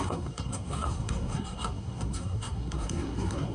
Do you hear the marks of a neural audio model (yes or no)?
yes